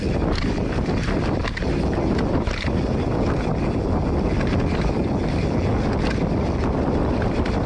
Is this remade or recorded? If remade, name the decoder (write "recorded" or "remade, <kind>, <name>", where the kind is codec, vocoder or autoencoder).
recorded